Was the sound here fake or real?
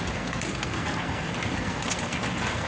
fake